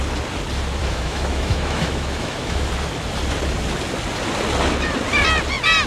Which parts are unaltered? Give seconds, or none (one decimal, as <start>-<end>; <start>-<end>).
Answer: 0.0-0.8; 2.7-5.9